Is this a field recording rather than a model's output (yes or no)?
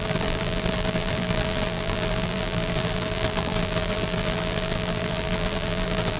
no